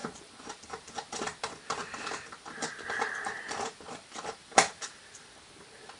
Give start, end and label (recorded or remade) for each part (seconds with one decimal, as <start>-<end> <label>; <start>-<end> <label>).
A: 0.0-1.2 remade; 1.2-1.8 recorded; 1.8-5.4 remade; 5.4-6.0 recorded